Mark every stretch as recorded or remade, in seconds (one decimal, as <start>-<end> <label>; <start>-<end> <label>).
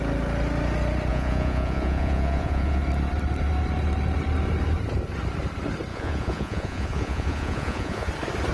0.0-1.1 recorded; 1.1-2.8 remade; 2.8-5.9 recorded; 5.9-8.1 remade; 8.1-8.5 recorded